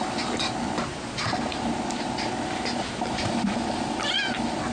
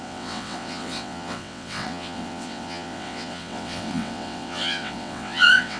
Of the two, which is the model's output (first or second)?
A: second